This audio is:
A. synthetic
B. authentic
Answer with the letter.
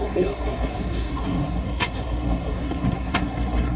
A